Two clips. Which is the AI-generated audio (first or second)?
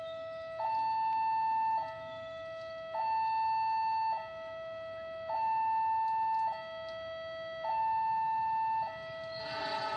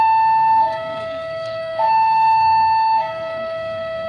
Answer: second